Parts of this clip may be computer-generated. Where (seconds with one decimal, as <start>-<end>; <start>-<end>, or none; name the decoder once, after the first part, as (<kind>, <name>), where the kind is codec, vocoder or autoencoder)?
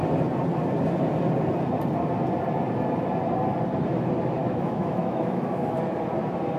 4.4-5.8 (autoencoder, DAC-VAE)